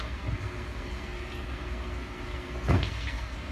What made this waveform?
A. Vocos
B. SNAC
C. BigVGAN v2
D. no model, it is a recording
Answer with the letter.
B